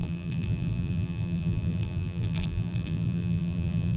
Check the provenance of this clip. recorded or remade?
remade